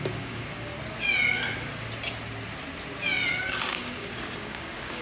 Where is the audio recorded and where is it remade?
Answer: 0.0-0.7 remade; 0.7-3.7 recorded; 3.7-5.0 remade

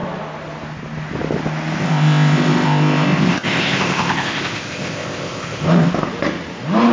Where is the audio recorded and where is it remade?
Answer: 0.0-1.8 recorded; 1.8-5.9 remade; 5.9-6.9 recorded

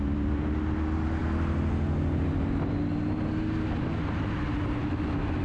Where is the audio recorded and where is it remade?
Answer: 0.0-4.8 recorded; 4.8-5.4 remade

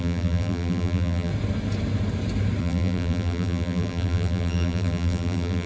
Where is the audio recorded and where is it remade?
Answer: 0.0-1.3 remade; 1.3-2.6 recorded; 2.6-5.7 remade

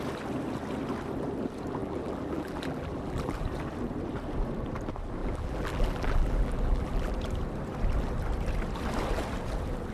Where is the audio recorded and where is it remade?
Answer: 0.0-1.8 recorded; 1.8-3.5 remade; 3.5-5.2 recorded; 5.2-7.1 remade; 7.1-9.9 recorded

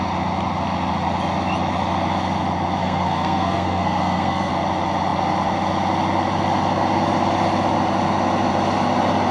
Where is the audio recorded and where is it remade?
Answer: 0.0-2.8 recorded; 2.8-4.5 remade; 4.5-9.3 recorded

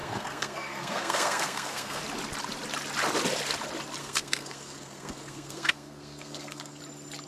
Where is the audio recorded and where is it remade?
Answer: 0.0-2.0 remade; 2.0-4.0 recorded; 4.0-6.8 remade; 6.8-7.3 recorded

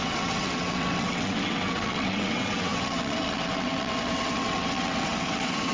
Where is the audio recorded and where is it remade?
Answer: 0.0-5.7 remade